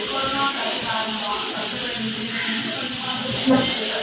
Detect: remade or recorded recorded